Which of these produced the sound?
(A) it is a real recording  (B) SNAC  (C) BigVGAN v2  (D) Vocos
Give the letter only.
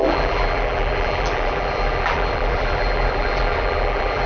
C